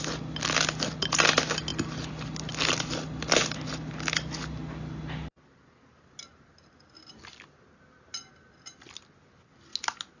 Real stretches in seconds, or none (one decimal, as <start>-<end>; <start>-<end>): 0.0-10.2